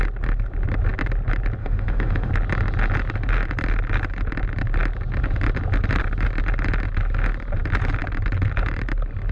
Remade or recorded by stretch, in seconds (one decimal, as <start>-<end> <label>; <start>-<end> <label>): 0.0-1.6 recorded; 1.6-2.3 remade; 2.3-9.3 recorded